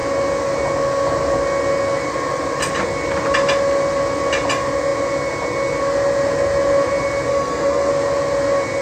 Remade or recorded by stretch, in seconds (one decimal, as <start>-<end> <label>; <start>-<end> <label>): 0.0-7.3 recorded; 7.3-7.9 remade; 7.9-8.8 recorded